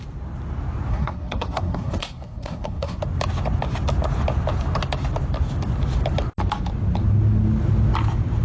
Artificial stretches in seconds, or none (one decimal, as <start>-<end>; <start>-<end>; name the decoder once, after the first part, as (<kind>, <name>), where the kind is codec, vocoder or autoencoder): 0.9-3.0 (codec, SNAC)